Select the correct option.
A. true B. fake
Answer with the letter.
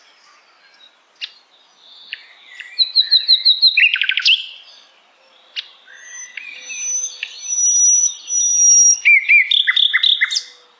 A